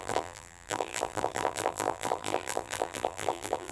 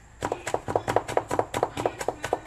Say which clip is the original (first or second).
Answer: second